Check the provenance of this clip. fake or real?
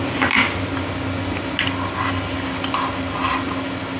real